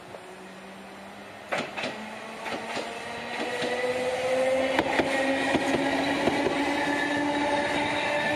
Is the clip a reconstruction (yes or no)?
no